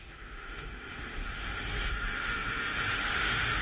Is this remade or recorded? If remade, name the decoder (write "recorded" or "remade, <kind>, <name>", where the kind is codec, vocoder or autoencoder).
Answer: remade, autoencoder, DAC-VAE